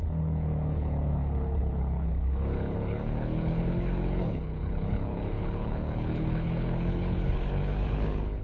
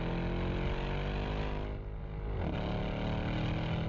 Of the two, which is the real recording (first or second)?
second